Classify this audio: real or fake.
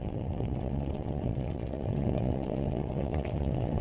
fake